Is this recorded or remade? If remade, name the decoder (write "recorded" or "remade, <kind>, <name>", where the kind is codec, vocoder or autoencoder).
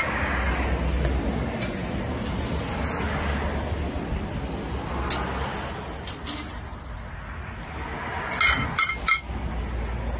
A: recorded